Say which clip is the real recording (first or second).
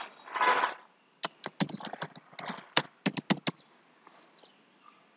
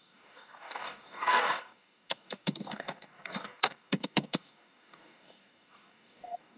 first